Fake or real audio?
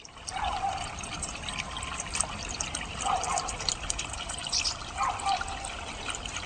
real